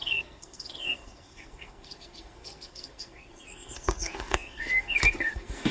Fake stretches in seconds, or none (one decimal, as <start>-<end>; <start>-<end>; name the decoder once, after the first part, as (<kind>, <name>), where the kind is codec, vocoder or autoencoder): 0.0-5.7 (codec, SNAC)